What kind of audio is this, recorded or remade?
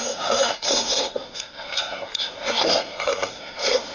remade